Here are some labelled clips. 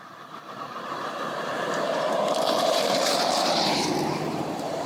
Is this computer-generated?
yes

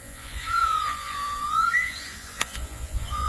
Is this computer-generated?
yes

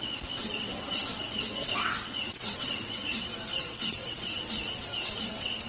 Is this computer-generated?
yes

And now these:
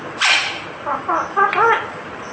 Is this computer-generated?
no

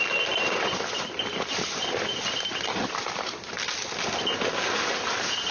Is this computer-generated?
no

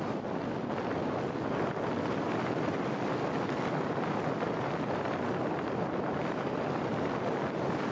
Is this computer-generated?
no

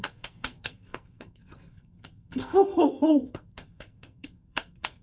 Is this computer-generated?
yes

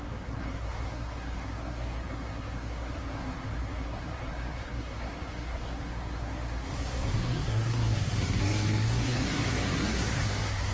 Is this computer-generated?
yes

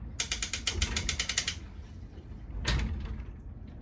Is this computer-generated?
no